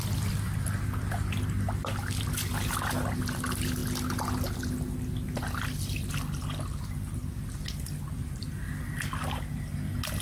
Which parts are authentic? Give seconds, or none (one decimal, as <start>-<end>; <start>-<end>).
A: 0.0-10.2